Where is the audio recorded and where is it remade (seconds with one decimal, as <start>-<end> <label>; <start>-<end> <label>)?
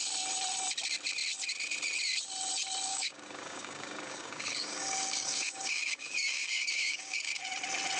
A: 0.0-2.9 recorded; 2.9-7.4 remade; 7.4-8.0 recorded